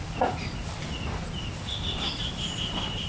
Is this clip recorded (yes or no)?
yes